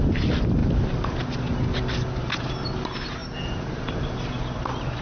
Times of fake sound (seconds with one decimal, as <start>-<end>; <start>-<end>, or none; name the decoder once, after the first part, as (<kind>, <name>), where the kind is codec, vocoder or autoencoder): none